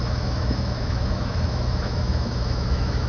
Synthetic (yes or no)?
yes